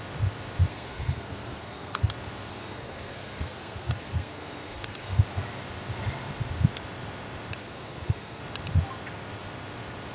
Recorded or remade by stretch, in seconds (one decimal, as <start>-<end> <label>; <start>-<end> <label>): 0.0-0.7 recorded; 0.7-2.1 remade; 2.1-2.5 recorded; 2.5-5.2 remade; 5.2-7.6 recorded; 7.6-8.4 remade; 8.4-10.1 recorded